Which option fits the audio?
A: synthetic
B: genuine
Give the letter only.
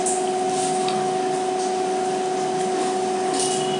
B